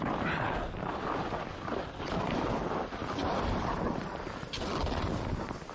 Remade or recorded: recorded